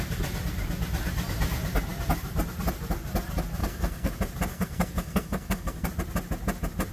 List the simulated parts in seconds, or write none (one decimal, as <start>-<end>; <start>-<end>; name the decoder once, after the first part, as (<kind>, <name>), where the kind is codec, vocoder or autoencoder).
3.6-4.1 (codec, SNAC); 4.5-5.9